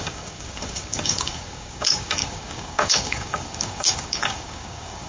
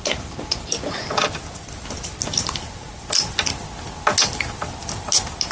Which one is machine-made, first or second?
first